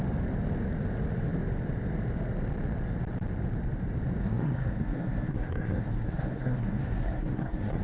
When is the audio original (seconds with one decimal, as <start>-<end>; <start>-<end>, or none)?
0.0-4.2